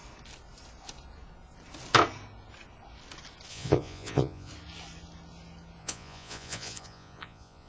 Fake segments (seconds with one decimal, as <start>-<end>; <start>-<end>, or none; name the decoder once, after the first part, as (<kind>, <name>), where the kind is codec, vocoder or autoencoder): 3.5-4.5 (vocoder, Vocos); 5.8-7.7